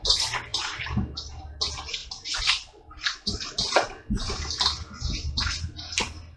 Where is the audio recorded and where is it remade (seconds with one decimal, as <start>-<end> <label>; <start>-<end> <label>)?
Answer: 0.0-6.4 recorded